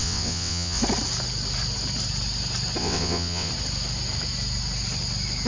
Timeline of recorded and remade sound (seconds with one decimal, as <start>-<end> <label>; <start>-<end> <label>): 0.0-0.8 remade; 0.8-2.8 recorded; 2.8-3.5 remade; 3.5-5.5 recorded